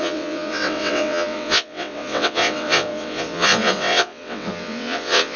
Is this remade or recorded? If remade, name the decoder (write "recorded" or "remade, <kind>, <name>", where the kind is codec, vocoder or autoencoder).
remade, vocoder, WaveNeXt